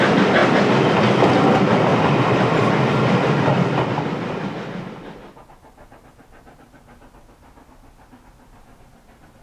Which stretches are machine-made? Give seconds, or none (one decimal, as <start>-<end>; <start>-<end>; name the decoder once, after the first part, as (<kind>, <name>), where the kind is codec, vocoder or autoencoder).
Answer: none

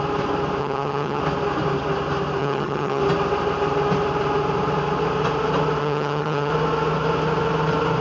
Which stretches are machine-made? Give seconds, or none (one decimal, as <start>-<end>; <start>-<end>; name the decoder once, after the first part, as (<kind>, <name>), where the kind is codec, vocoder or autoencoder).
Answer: 0.6-1.2 (vocoder, HiFi-GAN); 2.4-3.0; 5.8-6.5